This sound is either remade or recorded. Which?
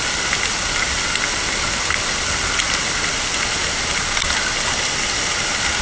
recorded